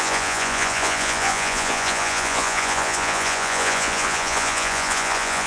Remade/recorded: remade